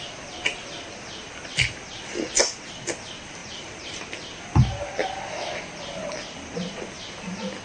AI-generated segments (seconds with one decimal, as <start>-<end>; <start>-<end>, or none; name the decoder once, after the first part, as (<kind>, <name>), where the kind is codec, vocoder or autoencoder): 3.4-4.0 (vocoder, BigVGAN v2)